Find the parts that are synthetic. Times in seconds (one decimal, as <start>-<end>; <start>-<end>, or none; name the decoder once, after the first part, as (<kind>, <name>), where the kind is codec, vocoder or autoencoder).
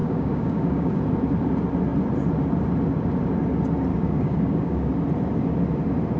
0.0-1.0 (codec, DAC); 3.9-4.9